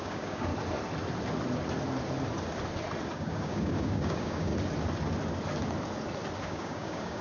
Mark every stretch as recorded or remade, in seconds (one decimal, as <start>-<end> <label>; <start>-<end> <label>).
0.0-0.5 remade; 0.5-3.1 recorded; 3.1-4.5 remade; 4.5-6.4 recorded; 6.4-7.2 remade